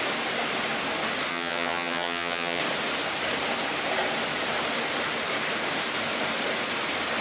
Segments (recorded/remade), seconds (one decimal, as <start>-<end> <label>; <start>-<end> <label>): 0.0-1.3 recorded; 1.3-2.6 remade; 2.6-7.2 recorded